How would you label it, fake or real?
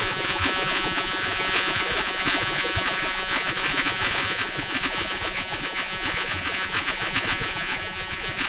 fake